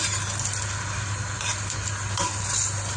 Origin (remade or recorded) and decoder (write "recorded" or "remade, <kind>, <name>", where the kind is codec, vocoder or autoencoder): recorded